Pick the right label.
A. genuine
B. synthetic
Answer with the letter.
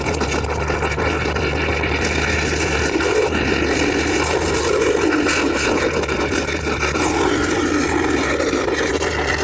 A